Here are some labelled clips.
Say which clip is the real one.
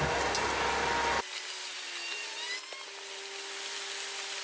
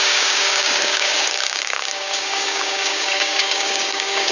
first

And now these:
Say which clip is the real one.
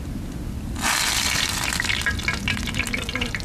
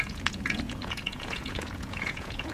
first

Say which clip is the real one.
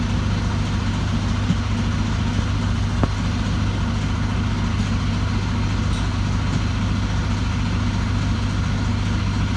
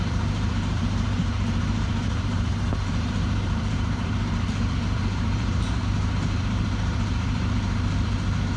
first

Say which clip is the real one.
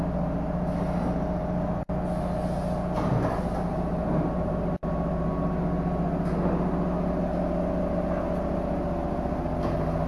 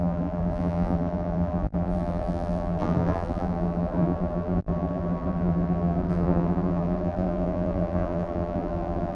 first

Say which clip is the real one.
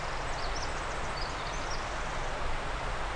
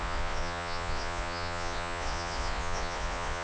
first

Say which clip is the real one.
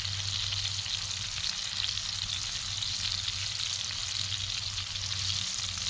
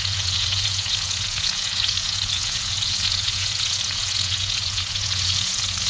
first